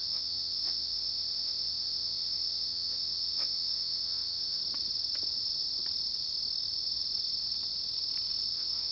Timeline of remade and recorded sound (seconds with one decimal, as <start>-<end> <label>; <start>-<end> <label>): 0.0-4.6 remade; 4.6-8.5 recorded; 8.5-8.9 remade